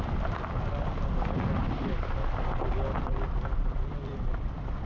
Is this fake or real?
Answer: fake